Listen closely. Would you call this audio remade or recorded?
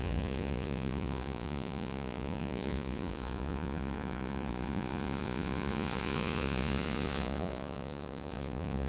remade